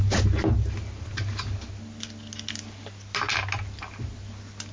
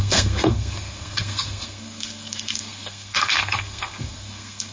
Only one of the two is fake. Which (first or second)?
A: second